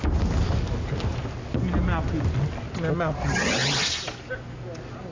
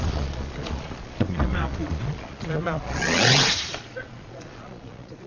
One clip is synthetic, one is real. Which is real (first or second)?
first